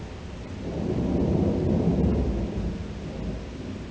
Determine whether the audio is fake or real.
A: real